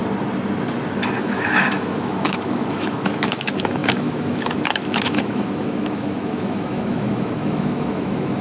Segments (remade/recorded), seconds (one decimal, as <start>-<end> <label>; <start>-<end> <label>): 0.0-1.2 recorded; 1.2-8.4 remade